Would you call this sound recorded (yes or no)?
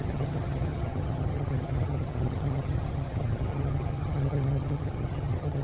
no